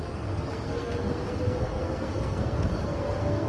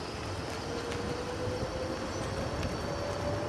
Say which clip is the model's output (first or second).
first